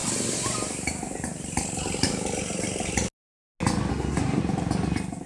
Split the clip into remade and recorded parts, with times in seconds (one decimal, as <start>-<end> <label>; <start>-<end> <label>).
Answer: 0.0-3.9 recorded; 3.9-4.4 remade; 4.4-5.3 recorded